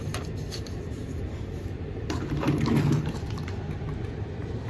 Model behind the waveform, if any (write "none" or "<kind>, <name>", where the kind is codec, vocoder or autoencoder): vocoder, BigVGAN v2